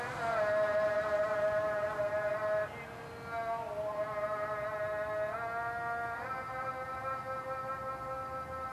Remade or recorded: recorded